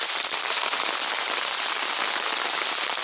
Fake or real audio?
fake